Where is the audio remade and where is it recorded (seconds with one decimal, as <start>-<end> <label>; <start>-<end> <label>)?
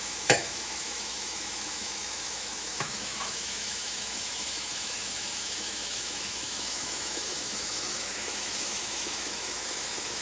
0.0-10.2 remade